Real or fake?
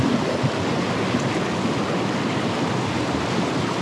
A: real